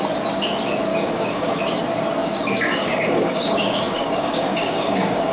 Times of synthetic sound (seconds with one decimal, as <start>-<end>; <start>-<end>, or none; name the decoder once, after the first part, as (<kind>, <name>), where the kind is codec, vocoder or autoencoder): 0.9-1.5 (codec, DAC); 2.2-5.3